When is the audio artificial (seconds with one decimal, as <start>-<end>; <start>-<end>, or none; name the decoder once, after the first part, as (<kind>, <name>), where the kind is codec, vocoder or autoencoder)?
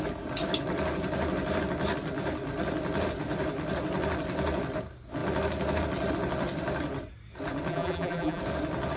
7.7-8.4 (vocoder, BigVGAN v2)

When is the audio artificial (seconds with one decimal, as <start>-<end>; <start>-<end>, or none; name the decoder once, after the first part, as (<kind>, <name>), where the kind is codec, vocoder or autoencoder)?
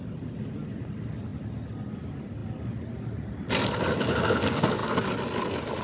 none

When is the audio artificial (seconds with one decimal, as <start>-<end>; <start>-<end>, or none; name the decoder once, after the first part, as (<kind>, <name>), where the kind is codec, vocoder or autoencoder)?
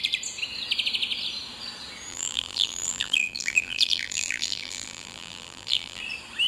2.1-6.0 (vocoder, BigVGAN v2)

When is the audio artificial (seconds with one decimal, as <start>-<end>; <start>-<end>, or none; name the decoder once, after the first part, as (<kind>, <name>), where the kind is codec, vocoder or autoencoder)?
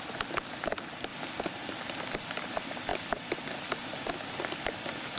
1.1-2.4 (vocoder, BigVGAN v2)